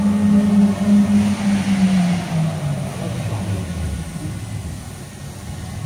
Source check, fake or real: real